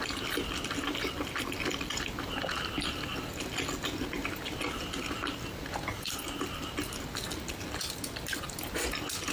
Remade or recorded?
recorded